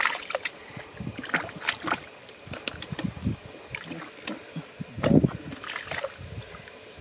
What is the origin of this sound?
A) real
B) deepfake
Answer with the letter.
A